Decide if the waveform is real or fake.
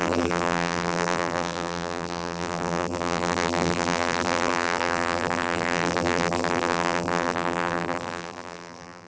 fake